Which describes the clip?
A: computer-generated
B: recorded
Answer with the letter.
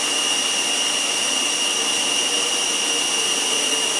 B